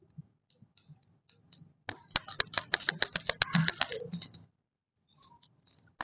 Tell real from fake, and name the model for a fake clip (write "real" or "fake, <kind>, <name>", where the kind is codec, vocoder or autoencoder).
real